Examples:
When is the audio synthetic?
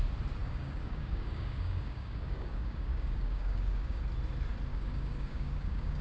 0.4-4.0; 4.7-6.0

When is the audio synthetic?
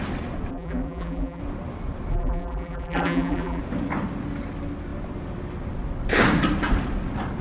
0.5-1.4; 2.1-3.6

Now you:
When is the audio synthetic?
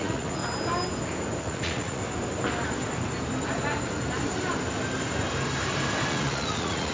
0.0-0.4; 1.4-2.0; 6.1-6.9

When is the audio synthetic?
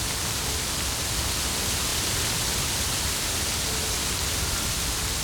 none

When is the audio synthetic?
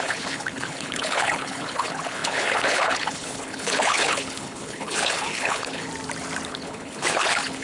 0.0-5.9; 6.5-7.6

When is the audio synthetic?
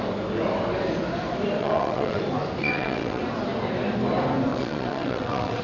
1.6-2.2; 2.6-3.2; 4.5-5.6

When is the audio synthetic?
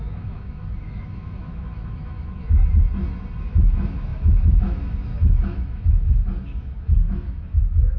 0.0-2.6; 3.4-8.0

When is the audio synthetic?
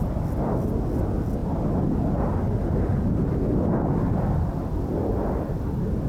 none